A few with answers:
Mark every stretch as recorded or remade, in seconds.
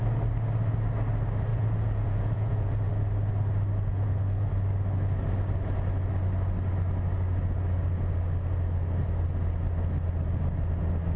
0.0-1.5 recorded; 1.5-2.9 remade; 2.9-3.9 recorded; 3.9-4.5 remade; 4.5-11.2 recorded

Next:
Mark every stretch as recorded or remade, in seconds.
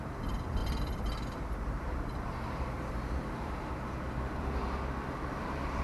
0.0-4.6 remade; 4.6-5.1 recorded; 5.1-5.8 remade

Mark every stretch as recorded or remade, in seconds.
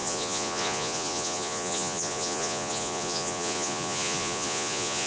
0.0-5.1 remade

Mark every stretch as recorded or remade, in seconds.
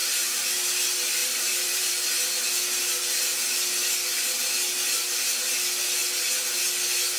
0.0-0.5 remade; 0.5-1.2 recorded; 1.2-1.9 remade; 1.9-7.2 recorded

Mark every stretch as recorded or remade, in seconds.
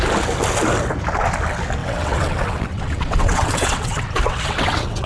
0.0-1.8 recorded; 1.8-5.1 remade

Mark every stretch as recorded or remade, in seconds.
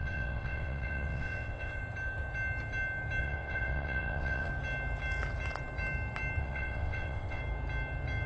0.0-1.8 remade; 1.8-3.2 recorded; 3.2-4.5 remade; 4.5-6.4 recorded; 6.4-7.4 remade; 7.4-8.3 recorded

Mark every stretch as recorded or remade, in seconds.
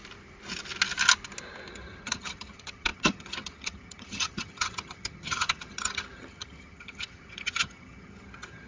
0.0-1.7 recorded; 1.7-8.7 remade